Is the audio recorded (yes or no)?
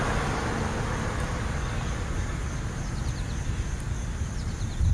yes